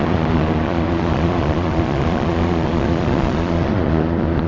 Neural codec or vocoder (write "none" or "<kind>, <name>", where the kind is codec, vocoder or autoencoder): vocoder, Vocos